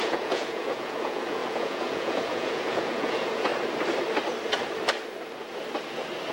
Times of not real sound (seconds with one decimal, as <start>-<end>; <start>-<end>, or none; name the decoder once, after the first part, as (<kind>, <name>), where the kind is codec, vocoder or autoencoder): 0.0-3.5 (vocoder, Vocos)